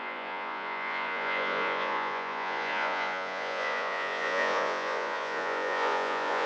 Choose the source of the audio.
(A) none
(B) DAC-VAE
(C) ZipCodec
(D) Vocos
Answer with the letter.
D